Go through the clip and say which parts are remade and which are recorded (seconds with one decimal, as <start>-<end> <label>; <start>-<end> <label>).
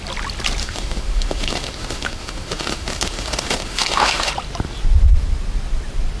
0.0-0.6 recorded; 0.6-4.3 remade; 4.3-6.2 recorded